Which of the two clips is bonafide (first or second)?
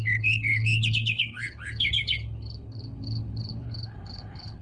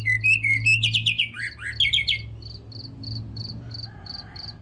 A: second